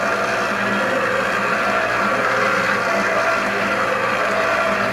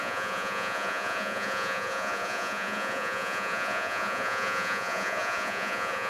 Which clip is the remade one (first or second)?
second